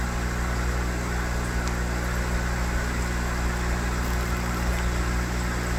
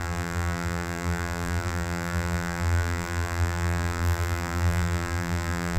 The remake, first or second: second